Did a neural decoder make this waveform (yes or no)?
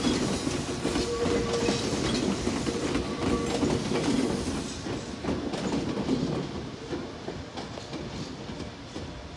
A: no